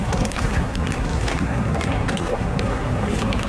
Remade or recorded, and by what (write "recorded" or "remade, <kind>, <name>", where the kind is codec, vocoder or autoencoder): remade, codec, SNAC